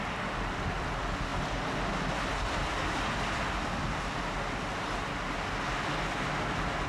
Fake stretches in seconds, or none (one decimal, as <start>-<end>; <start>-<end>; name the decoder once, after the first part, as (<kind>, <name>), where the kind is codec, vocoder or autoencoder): none